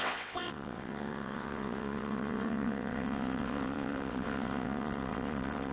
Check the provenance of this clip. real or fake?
fake